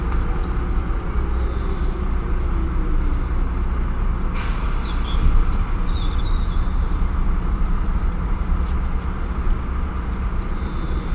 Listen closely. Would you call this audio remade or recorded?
recorded